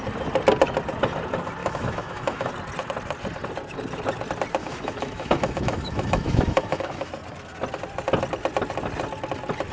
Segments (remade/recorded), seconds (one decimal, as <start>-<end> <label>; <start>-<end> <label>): 0.0-1.6 recorded; 1.6-2.5 remade; 2.5-4.6 recorded; 4.6-7.1 remade; 7.1-9.7 recorded